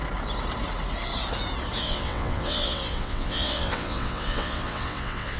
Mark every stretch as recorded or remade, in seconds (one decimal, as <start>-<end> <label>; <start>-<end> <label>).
0.0-1.8 recorded; 1.8-5.4 remade